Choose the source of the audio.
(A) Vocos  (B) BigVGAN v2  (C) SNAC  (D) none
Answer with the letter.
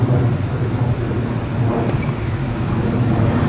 D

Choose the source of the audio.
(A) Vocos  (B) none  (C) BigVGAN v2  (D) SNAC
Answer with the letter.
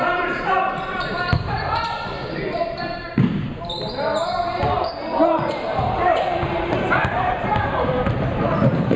C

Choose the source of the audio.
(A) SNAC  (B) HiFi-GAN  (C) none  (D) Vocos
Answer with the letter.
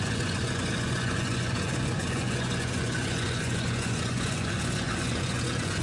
D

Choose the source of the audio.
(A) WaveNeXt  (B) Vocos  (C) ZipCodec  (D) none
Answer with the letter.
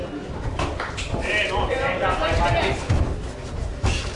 D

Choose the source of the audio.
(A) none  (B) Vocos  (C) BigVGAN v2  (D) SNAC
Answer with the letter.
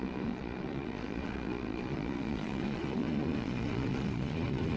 B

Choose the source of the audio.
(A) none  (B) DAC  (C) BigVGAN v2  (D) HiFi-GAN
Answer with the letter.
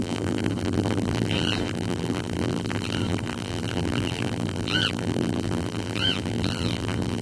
C